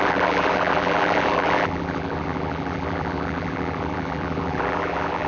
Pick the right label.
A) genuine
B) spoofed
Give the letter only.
B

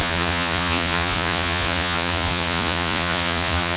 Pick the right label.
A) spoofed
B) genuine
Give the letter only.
A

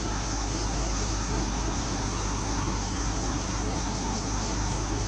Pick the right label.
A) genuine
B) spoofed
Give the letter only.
B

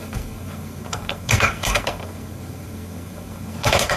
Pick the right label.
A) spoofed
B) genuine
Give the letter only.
A